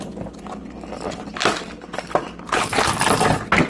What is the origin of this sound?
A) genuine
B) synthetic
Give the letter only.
A